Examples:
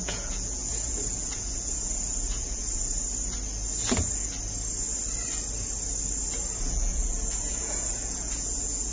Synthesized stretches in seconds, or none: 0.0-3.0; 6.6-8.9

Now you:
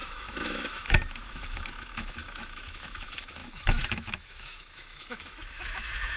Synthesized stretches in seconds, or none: 0.0-6.2

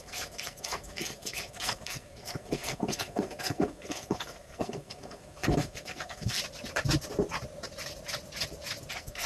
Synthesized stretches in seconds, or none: 0.0-6.4; 8.9-9.3

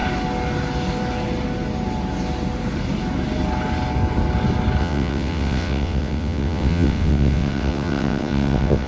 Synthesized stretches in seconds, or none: 4.8-8.9